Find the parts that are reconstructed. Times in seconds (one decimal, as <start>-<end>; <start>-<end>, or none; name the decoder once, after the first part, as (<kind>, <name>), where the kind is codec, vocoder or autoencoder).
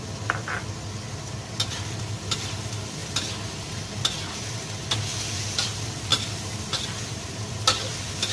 none